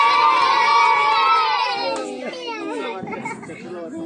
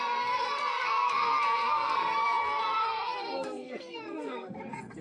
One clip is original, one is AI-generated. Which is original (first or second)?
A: first